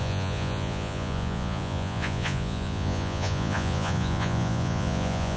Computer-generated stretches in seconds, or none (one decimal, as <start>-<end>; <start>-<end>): 0.0-5.4